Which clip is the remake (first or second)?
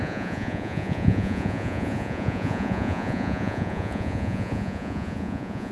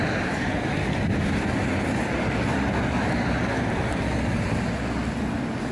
first